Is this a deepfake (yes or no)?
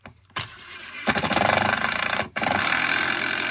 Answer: yes